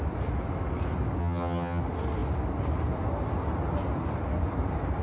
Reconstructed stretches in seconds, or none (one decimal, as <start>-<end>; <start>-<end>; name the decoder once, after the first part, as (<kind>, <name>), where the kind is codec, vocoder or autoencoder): 1.2-1.8 (vocoder, HiFi-GAN)